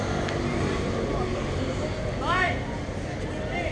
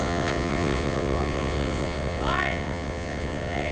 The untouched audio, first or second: first